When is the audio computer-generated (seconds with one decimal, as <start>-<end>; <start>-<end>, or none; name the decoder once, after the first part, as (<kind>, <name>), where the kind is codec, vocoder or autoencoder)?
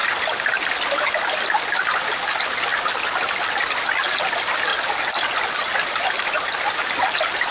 none